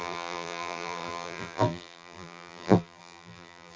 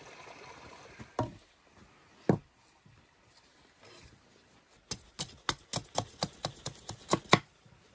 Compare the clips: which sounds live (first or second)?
second